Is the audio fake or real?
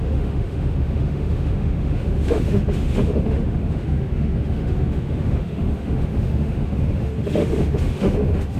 fake